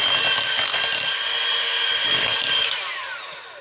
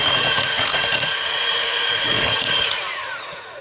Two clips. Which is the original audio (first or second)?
first